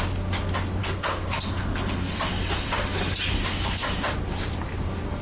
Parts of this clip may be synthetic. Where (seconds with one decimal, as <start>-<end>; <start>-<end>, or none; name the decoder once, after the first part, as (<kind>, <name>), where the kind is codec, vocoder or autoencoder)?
0.8-2.2 (codec, SNAC)